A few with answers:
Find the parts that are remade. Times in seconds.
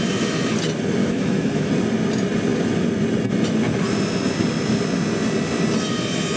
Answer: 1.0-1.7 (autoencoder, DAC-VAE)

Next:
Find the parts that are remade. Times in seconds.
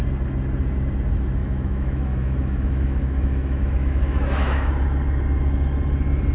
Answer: 1.4-4.7 (autoencoder, DAC-VAE)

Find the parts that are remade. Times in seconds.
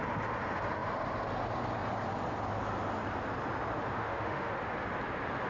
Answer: 3.9-4.5 (autoencoder, DAC-VAE)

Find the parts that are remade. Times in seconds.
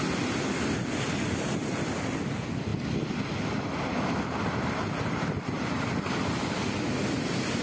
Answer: none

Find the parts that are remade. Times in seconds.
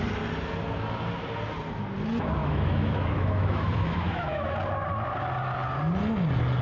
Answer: 2.4-4.5 (autoencoder, DAC-VAE)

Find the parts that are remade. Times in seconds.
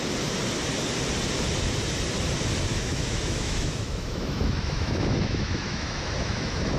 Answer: 2.7-6.8 (autoencoder, DAC-VAE)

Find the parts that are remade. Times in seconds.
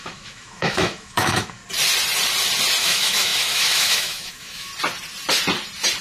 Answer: 0.0-1.6 (autoencoder, DAC-VAE); 2.8-4.7